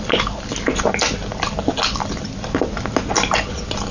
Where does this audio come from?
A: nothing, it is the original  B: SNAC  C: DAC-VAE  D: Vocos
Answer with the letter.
A